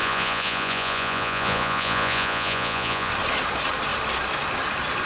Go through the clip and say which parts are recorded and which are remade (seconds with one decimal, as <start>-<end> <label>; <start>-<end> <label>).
0.0-3.1 remade; 3.1-5.1 recorded